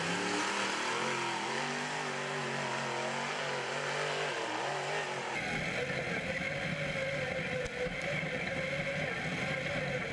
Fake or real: real